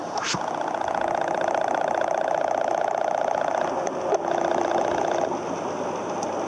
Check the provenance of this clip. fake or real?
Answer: real